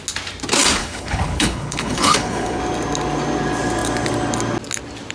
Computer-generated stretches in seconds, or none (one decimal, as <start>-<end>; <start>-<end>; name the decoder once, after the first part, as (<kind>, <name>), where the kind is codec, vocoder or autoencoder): 0.8-2.6 (codec, HILCodec)